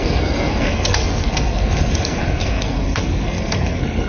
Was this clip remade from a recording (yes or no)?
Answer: yes